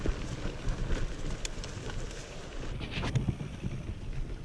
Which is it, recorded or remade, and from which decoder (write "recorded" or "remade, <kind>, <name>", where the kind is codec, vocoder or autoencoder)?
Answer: recorded